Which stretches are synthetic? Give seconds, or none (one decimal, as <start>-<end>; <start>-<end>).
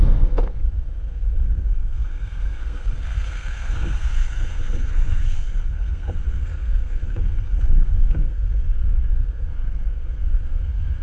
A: 0.0-11.0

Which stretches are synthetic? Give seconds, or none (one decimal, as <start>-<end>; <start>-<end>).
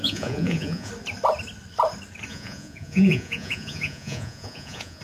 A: 0.0-0.9; 2.3-5.0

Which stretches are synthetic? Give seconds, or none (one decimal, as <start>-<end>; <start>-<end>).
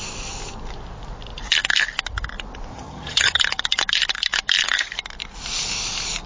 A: 2.7-3.4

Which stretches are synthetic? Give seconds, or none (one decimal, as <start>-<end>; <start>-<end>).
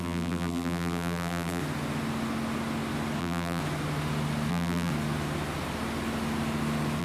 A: 0.0-1.6; 3.2-3.6; 4.5-4.9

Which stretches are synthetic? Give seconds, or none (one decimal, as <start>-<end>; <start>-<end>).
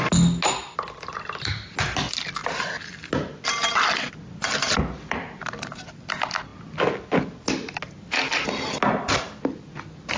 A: none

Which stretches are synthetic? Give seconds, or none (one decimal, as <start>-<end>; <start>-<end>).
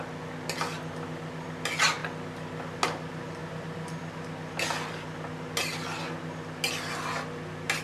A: none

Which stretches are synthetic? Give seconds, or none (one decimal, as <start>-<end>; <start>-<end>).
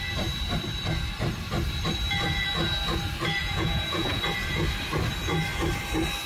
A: 3.4-4.2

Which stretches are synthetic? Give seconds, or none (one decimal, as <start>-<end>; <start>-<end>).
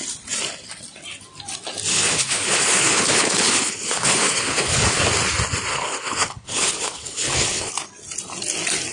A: 1.9-5.0; 5.7-7.7